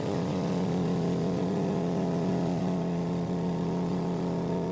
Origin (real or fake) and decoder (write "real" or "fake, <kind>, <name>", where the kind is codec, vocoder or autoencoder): fake, vocoder, Vocos